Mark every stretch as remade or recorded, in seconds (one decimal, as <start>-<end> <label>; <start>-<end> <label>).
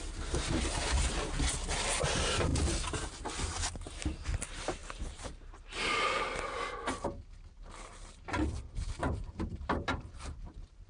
0.0-2.5 recorded; 2.5-3.1 remade; 3.1-4.8 recorded; 4.8-5.3 remade; 5.3-9.0 recorded; 9.0-10.9 remade